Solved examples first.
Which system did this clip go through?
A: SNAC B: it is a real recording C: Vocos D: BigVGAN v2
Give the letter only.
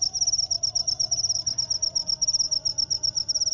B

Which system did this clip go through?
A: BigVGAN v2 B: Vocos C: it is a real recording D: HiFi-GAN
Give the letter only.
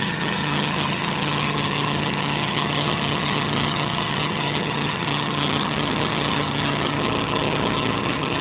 D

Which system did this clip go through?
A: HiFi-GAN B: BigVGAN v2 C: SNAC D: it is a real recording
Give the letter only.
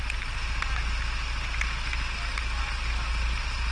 D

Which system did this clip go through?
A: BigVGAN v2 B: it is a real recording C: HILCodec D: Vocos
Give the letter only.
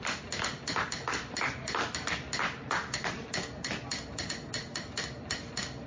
B